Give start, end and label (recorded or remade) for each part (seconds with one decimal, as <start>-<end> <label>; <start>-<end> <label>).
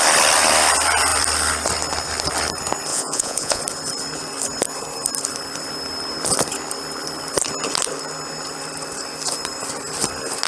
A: 0.0-2.9 recorded; 2.9-3.6 remade; 3.6-10.5 recorded